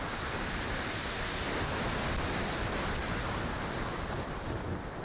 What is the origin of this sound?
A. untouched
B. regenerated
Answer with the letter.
A